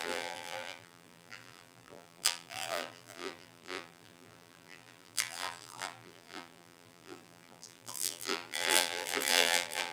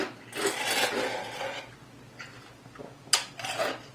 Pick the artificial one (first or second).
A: first